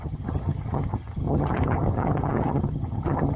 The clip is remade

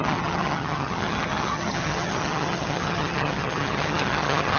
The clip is remade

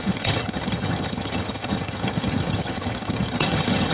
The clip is remade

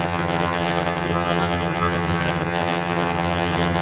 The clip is remade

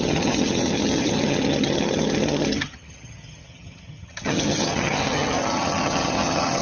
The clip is remade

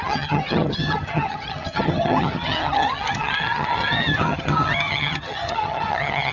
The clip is remade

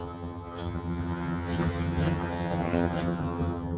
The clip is remade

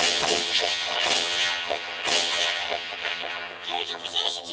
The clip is remade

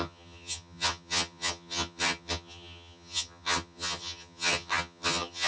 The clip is remade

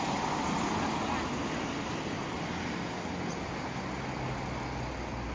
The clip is recorded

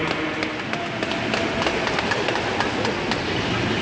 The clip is recorded